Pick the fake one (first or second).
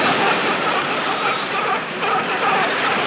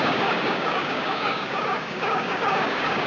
second